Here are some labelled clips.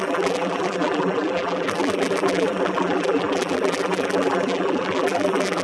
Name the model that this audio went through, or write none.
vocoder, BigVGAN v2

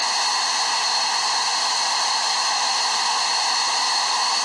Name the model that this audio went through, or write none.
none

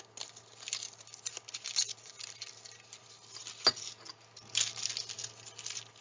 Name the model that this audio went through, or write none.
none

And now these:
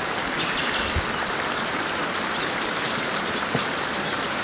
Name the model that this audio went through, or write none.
none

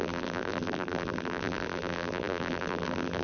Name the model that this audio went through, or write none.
vocoder, BigVGAN v2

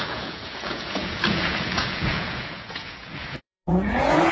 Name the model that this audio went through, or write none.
vocoder, Vocos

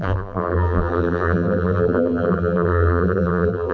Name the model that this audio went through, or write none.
vocoder, BigVGAN v2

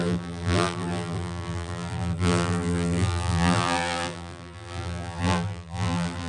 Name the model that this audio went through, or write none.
vocoder, BigVGAN v2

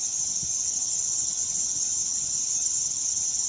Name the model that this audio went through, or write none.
vocoder, HiFi-GAN